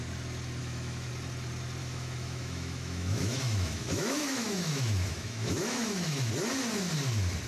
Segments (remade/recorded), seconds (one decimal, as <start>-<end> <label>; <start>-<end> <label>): 0.0-0.6 recorded; 0.6-1.1 remade; 1.1-1.8 recorded; 1.8-6.3 remade; 6.3-7.5 recorded